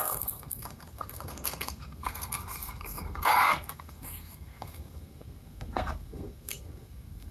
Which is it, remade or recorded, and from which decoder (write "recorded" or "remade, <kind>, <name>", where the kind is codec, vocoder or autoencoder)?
remade, codec, SNAC